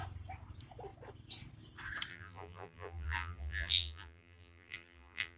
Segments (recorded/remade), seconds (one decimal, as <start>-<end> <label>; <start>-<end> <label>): 0.0-2.1 recorded; 2.1-5.4 remade